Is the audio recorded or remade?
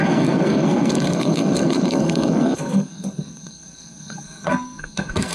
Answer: remade